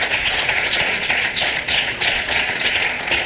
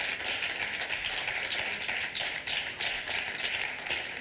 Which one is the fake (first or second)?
first